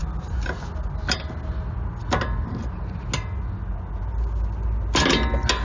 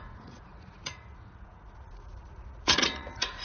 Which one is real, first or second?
first